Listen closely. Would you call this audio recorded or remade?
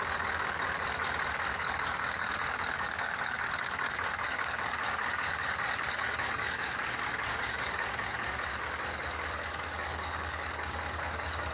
remade